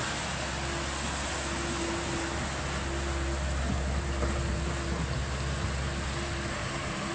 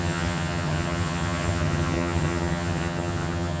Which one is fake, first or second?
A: second